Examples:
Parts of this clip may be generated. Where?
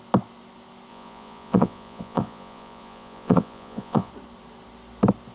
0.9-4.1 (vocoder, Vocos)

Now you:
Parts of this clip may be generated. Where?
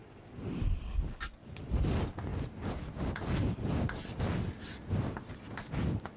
none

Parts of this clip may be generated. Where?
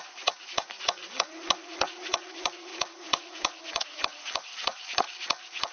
0.0-5.7 (vocoder, Vocos)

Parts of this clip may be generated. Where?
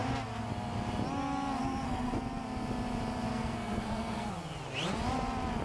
1.6-2.2 (codec, SNAC); 3.3-4.3